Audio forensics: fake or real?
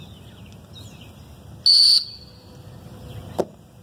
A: real